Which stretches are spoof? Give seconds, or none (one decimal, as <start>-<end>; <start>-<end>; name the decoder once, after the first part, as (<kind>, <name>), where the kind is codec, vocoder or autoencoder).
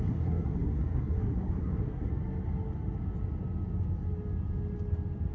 0.0-2.1 (codec, SNAC)